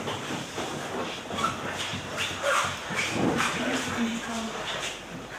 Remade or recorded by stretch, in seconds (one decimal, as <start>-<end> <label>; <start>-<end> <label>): 0.0-1.9 recorded; 1.9-4.3 remade; 4.3-5.4 recorded